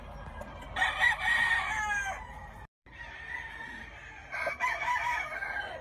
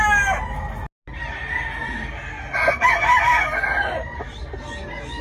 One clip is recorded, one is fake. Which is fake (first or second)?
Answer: first